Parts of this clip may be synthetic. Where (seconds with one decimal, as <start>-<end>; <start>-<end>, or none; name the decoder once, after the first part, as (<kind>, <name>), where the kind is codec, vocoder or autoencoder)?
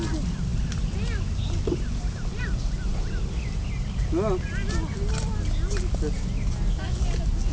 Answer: none